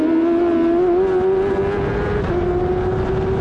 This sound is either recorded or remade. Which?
recorded